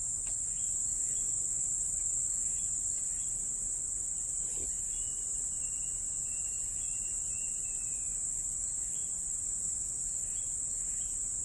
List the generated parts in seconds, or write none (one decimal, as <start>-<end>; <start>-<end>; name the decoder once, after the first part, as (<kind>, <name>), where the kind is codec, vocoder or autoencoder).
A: none